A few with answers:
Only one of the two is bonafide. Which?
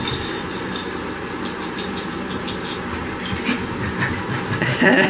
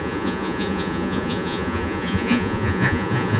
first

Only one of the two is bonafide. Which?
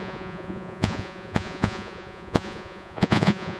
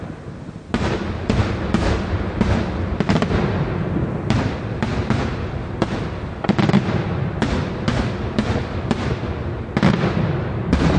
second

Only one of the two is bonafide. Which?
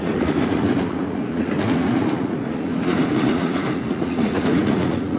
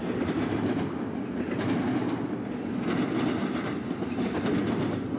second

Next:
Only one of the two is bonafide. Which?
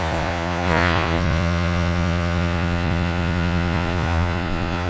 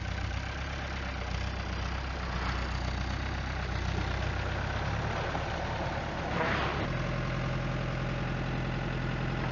second